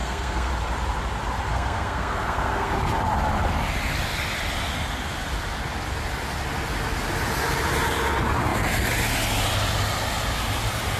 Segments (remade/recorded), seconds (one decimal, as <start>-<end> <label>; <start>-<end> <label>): 0.0-0.5 remade; 0.5-1.5 recorded; 1.5-2.7 remade; 2.7-11.0 recorded